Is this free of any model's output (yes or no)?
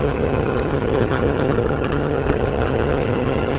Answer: no